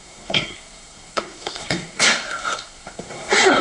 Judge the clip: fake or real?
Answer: fake